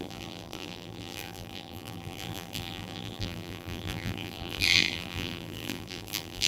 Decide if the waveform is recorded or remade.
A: remade